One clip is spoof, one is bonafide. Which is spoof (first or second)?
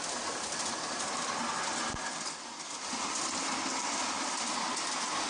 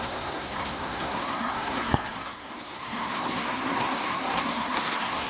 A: second